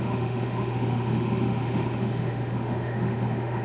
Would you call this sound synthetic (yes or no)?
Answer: yes